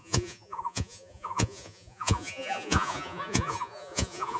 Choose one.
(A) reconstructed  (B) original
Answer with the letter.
A